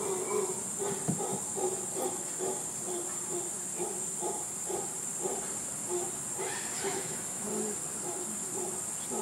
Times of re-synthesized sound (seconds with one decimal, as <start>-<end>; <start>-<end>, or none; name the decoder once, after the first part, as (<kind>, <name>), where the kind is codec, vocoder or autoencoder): 6.9-7.5 (autoencoder, DAC-VAE)